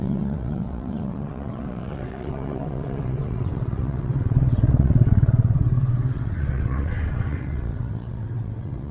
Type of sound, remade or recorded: remade